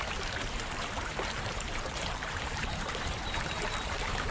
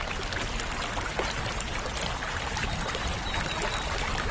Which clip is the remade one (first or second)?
first